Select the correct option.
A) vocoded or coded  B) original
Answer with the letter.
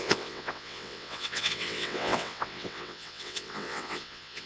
A